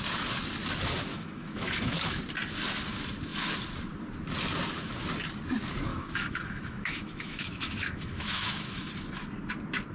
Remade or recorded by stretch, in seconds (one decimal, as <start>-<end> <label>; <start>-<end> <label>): 0.0-1.1 recorded; 1.1-2.2 remade; 2.2-5.9 recorded; 5.9-8.9 remade; 8.9-9.9 recorded